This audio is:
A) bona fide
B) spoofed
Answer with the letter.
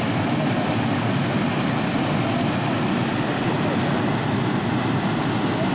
A